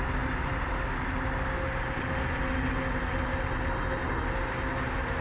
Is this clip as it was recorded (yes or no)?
yes